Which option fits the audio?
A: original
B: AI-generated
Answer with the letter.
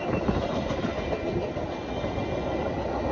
A